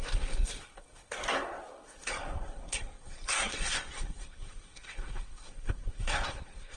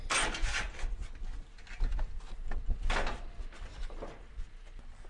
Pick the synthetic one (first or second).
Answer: first